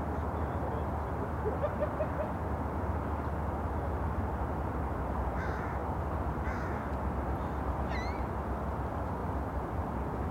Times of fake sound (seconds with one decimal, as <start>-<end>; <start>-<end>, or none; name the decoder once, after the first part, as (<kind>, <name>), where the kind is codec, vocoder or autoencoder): none